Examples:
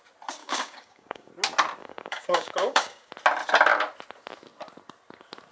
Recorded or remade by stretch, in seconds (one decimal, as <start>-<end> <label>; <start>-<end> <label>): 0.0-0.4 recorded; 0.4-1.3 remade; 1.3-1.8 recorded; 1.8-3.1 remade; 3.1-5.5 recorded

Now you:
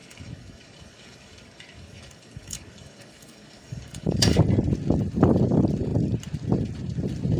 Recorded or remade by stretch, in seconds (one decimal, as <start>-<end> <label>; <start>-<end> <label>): 0.0-4.4 remade; 4.4-7.4 recorded

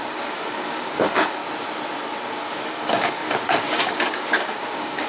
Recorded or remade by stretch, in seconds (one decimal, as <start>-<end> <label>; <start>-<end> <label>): 0.0-1.4 remade; 1.4-2.5 recorded; 2.5-5.1 remade